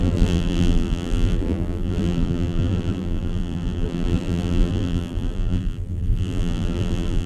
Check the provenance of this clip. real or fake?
fake